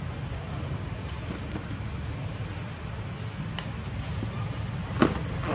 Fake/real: real